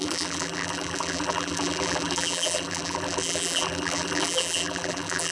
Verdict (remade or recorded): remade